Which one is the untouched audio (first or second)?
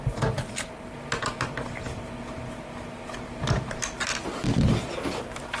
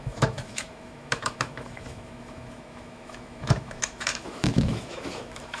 first